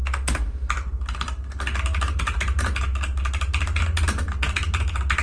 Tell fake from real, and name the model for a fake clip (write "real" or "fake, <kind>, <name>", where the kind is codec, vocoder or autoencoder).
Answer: real